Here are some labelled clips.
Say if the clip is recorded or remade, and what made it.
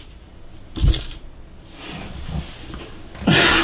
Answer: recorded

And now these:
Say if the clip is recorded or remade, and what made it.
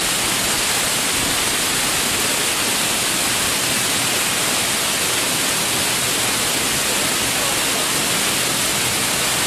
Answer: recorded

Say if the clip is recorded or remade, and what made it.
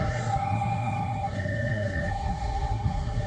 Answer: remade, codec, SNAC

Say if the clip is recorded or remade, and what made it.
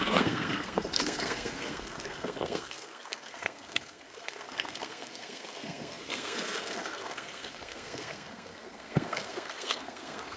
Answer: remade, codec, SNAC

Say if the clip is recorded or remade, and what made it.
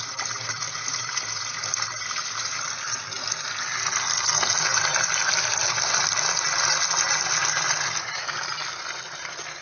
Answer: recorded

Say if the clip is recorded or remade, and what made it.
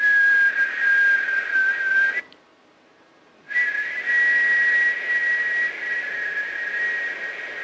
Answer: recorded